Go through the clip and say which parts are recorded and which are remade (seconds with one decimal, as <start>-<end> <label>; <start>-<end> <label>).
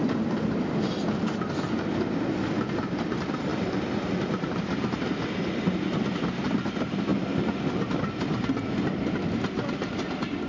0.0-10.5 recorded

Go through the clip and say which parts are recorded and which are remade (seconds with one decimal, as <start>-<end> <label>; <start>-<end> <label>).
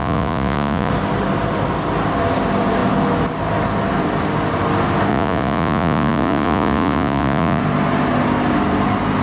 0.0-0.9 remade; 0.9-5.1 recorded; 5.1-7.6 remade; 7.6-9.2 recorded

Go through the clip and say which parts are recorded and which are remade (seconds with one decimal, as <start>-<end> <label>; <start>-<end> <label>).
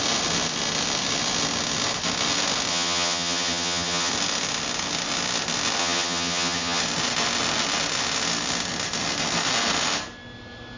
0.0-2.7 recorded; 2.7-4.1 remade; 4.1-5.8 recorded; 5.8-6.8 remade; 6.8-10.8 recorded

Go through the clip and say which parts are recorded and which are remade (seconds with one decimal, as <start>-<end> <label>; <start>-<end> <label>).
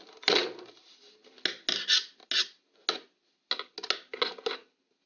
0.0-5.1 recorded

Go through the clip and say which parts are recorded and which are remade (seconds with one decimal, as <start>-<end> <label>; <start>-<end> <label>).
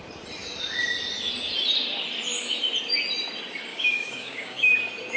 0.0-3.7 recorded; 3.7-4.8 remade; 4.8-5.2 recorded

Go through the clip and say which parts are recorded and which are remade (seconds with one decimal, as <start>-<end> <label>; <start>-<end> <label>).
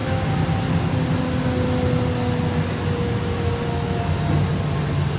0.0-5.2 recorded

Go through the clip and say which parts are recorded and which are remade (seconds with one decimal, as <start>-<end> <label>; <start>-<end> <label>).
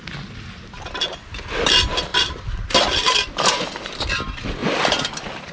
0.0-5.5 recorded